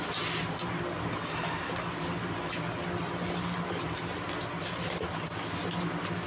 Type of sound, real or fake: real